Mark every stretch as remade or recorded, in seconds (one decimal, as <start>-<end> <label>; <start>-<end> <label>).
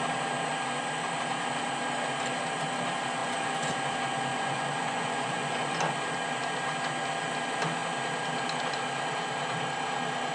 0.0-3.2 recorded; 3.2-3.7 remade; 3.7-4.3 recorded; 4.3-5.8 remade; 5.8-10.3 recorded